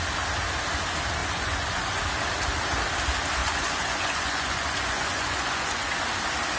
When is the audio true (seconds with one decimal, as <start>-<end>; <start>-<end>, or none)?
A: 0.0-1.2; 2.0-3.4; 5.9-6.6